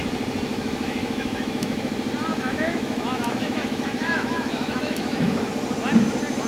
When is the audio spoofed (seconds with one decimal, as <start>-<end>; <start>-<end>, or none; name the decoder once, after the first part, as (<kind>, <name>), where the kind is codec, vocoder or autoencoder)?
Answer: 0.5-1.9 (autoencoder, DAC-VAE); 2.3-5.5